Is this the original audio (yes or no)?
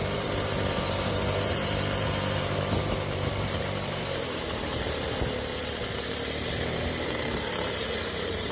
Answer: no